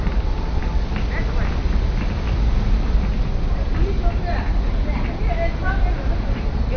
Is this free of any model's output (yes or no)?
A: yes